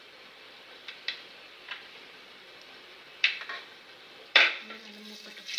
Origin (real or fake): fake